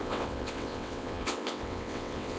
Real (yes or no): no